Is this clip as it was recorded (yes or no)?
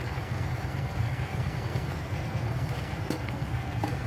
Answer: no